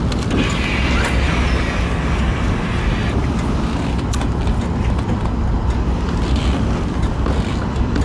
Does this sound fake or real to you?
real